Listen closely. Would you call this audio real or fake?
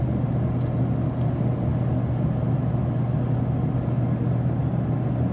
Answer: real